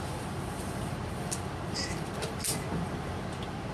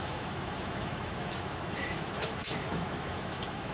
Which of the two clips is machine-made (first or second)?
second